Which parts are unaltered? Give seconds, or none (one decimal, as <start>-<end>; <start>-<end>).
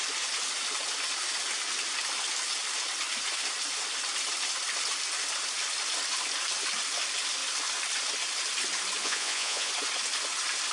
0.0-9.0; 9.7-10.7